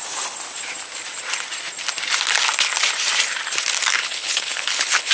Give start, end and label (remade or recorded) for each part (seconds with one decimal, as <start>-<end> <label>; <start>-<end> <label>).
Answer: 0.0-4.0 recorded; 4.0-5.1 remade